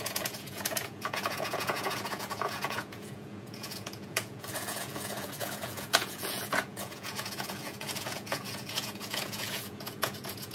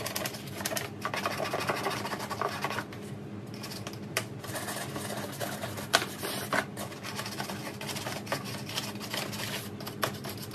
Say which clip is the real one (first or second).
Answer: second